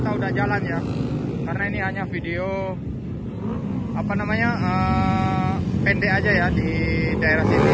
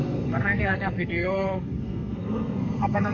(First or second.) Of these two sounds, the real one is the first